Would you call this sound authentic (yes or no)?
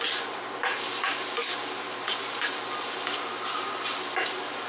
yes